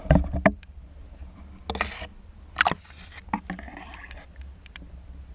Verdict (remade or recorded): recorded